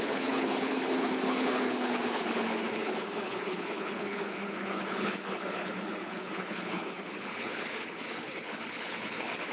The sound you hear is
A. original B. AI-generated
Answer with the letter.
B